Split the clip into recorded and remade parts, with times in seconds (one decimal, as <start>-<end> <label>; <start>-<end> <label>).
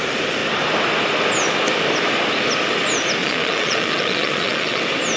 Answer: 0.0-3.2 recorded; 3.2-4.8 remade; 4.8-5.2 recorded